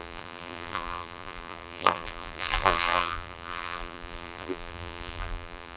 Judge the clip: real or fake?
fake